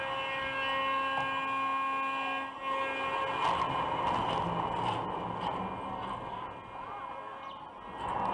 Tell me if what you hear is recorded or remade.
recorded